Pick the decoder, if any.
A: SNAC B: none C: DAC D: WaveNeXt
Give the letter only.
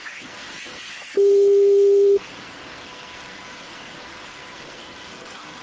A